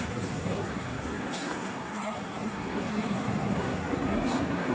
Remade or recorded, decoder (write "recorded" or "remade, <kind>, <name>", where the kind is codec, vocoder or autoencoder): remade, codec, SNAC